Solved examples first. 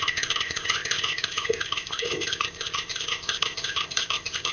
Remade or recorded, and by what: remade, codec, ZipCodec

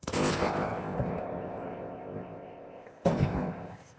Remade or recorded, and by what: remade, codec, ZipCodec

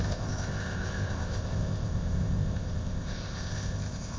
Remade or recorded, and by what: remade, codec, ZipCodec